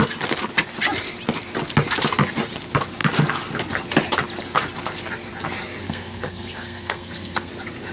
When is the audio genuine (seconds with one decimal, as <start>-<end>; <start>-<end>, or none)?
0.0-5.8; 7.5-7.9